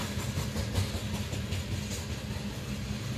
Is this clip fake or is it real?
real